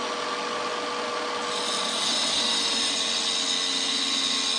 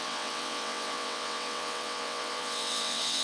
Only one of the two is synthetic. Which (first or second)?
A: second